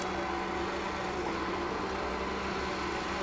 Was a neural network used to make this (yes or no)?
no